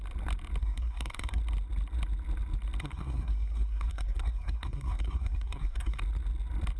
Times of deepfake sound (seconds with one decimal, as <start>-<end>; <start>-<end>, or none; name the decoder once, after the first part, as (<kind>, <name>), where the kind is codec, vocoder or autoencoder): 0.6-1.4 (codec, SNAC); 2.8-6.0